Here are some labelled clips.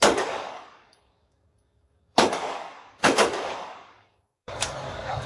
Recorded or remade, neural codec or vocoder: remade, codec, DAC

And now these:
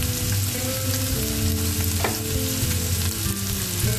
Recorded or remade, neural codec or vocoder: recorded